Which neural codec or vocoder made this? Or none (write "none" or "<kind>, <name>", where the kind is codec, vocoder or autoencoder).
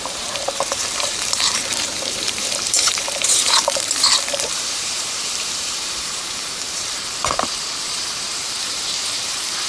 vocoder, BigVGAN v2